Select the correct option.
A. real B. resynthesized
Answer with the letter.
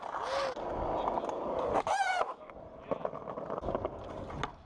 A